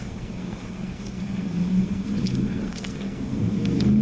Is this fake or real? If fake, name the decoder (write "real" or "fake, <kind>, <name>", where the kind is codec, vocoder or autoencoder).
fake, codec, SNAC